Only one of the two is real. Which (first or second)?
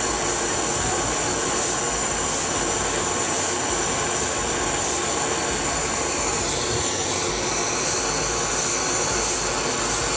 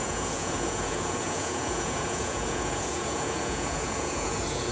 first